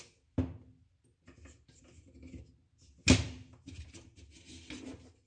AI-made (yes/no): no